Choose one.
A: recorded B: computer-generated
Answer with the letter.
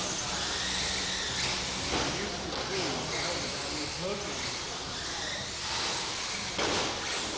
A